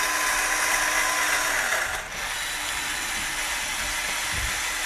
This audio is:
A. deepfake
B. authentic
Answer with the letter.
B